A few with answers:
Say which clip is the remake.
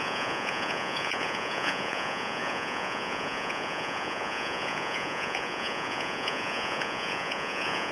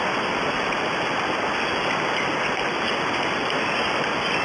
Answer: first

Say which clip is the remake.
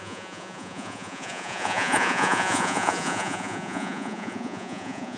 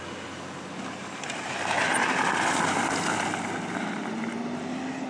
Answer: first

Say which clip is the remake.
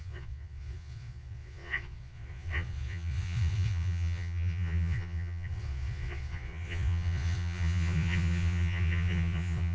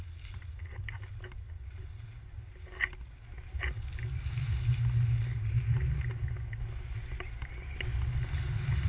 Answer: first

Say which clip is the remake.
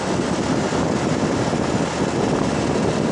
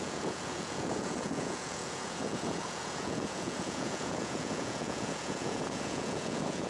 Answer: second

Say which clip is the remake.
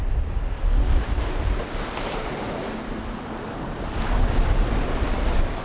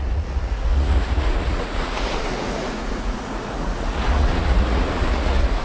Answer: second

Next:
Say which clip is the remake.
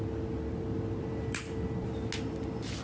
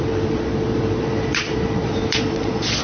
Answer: second